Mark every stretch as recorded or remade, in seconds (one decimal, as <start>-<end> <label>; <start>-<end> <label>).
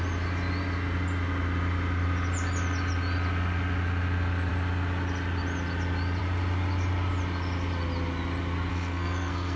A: 0.0-8.7 recorded; 8.7-9.6 remade